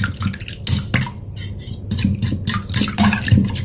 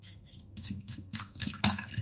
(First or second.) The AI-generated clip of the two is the second